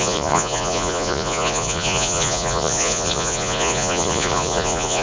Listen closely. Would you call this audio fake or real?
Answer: fake